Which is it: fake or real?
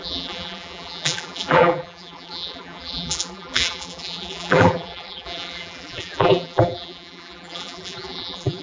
fake